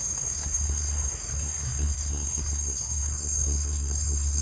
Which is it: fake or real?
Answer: fake